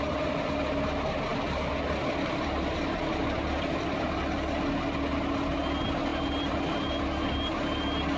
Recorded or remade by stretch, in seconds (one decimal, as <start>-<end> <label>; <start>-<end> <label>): 0.0-1.3 recorded; 1.3-3.8 remade; 3.8-6.1 recorded; 6.1-7.0 remade; 7.0-8.2 recorded